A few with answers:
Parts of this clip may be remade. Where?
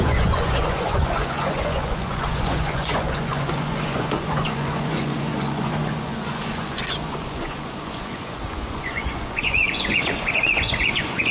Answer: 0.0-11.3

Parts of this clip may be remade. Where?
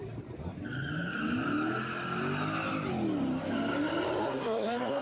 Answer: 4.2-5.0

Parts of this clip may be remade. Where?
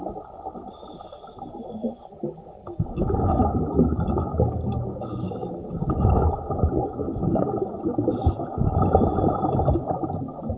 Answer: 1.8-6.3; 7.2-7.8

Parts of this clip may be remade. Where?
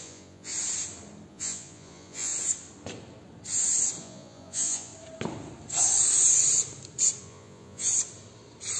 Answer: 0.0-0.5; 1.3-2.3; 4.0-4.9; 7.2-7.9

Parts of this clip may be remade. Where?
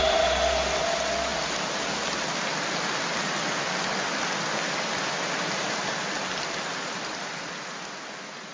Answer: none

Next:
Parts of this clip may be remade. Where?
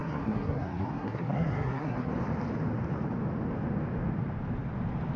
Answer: 0.0-2.1